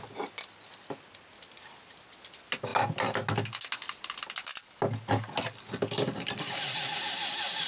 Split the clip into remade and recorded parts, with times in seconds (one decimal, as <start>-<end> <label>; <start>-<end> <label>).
0.0-7.7 recorded